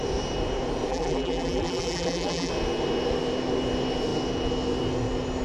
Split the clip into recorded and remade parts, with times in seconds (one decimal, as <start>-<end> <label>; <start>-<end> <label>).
0.0-0.9 recorded; 0.9-2.5 remade; 2.5-5.4 recorded